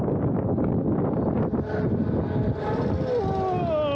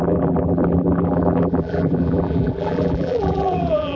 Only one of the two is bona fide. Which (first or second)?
first